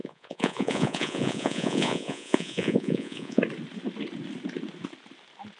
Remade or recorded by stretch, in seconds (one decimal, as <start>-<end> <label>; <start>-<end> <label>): 0.0-3.4 remade; 3.4-5.6 recorded